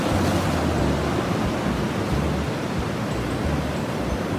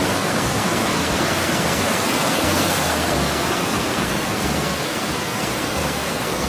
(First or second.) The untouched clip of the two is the first